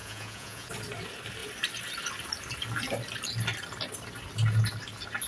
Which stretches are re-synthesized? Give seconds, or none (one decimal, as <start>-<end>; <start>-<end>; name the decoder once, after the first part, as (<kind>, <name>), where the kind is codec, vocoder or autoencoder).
0.0-0.7 (vocoder, Vocos)